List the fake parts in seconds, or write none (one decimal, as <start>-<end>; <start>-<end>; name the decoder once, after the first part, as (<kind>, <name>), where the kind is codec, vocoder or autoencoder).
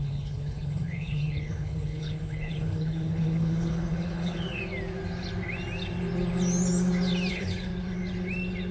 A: 0.0-4.6 (codec, HILCodec); 7.3-7.7